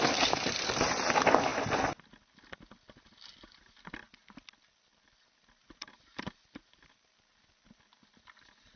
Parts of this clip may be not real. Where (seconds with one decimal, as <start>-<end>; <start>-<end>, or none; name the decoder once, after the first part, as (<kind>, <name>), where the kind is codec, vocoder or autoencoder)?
5.6-7.1 (vocoder, BigVGAN v2)